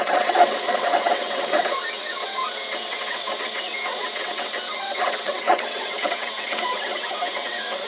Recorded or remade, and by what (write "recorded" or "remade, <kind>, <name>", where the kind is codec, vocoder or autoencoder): remade, vocoder, WaveNeXt